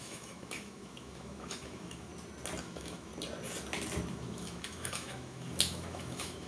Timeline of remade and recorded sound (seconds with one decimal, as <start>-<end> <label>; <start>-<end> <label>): 0.0-2.1 remade; 2.1-2.6 recorded; 2.6-3.1 remade; 3.1-4.1 recorded; 4.1-6.5 remade